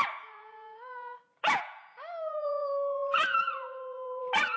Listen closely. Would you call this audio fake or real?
fake